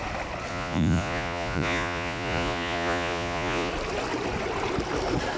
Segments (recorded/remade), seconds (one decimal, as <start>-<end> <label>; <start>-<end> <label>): 0.0-0.5 recorded; 0.5-3.7 remade; 3.7-5.4 recorded